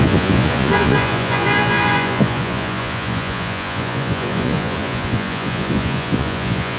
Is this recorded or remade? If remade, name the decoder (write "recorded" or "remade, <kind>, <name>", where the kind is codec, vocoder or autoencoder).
remade, vocoder, Vocos